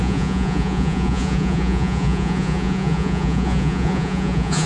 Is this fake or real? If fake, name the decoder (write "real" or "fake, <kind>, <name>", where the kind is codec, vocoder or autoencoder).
fake, vocoder, Vocos